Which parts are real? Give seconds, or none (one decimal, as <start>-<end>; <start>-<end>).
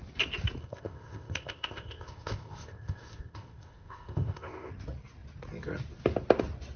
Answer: 0.0-0.6; 4.7-6.8